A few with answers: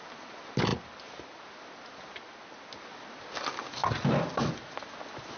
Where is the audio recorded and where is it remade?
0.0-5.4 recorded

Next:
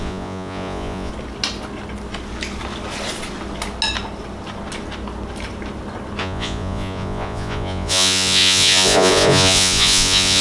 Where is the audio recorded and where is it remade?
0.0-1.1 remade; 1.1-6.2 recorded; 6.2-10.4 remade

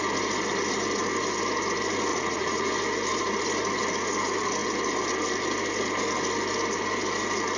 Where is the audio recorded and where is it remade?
0.0-2.1 recorded; 2.1-2.7 remade; 2.7-7.6 recorded

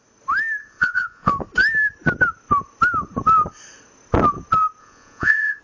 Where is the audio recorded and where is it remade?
0.0-0.6 recorded; 0.6-1.3 remade; 1.3-4.8 recorded; 4.8-5.6 remade

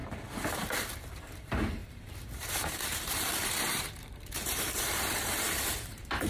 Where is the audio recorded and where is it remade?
0.0-1.1 recorded; 1.1-6.3 remade

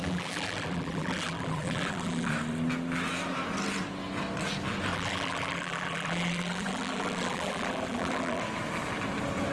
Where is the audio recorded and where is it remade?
0.0-2.3 remade; 2.3-4.9 recorded; 4.9-8.4 remade; 8.4-9.5 recorded

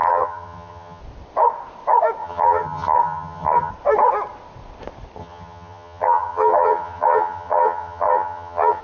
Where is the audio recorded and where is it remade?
0.0-1.0 remade; 1.0-2.2 recorded; 2.2-3.7 remade; 3.7-5.2 recorded; 5.2-8.8 remade